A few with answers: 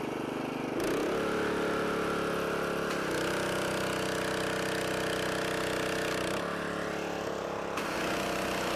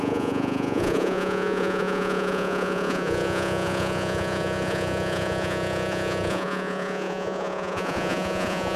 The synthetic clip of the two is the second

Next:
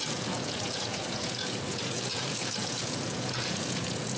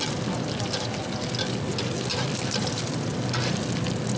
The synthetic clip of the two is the first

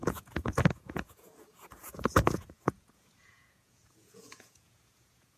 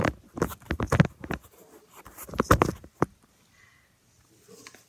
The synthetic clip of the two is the first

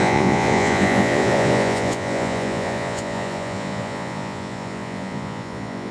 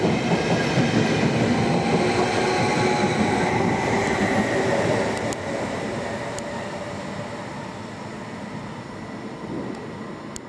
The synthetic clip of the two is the first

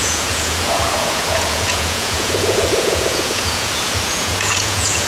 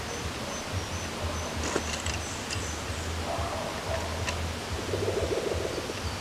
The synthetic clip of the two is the first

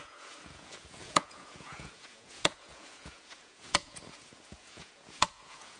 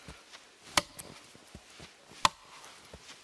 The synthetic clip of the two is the first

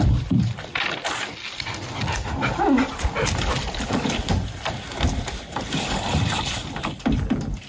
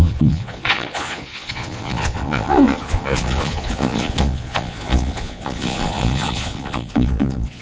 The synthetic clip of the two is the second